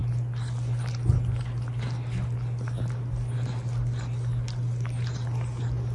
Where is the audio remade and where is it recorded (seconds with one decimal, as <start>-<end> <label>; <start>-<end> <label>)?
0.0-5.9 recorded